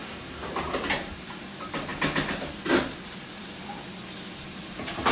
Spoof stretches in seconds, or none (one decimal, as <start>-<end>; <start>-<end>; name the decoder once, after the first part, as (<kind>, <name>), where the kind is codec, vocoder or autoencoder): 0.0-0.5 (codec, SNAC)